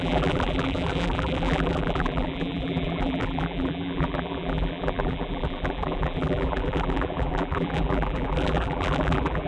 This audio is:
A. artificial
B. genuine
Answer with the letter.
A